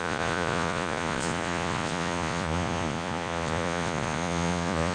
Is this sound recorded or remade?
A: remade